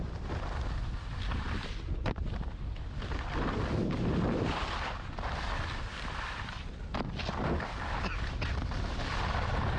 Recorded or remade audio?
recorded